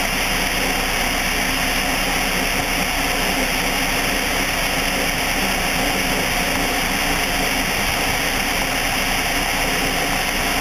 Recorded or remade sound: recorded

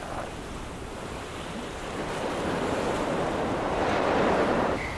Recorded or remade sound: remade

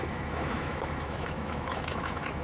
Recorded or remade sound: remade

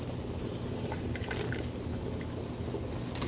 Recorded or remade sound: recorded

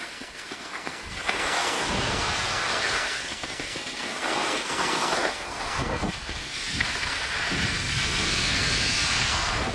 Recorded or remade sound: remade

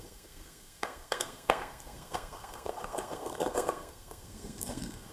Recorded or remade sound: remade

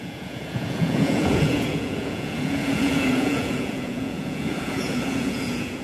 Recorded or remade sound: remade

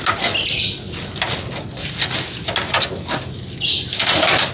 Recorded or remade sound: recorded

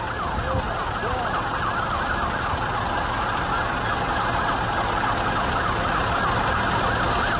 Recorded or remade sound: recorded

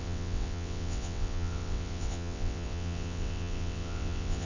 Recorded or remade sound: remade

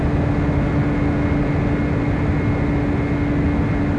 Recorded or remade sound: recorded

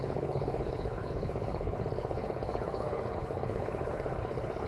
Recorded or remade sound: remade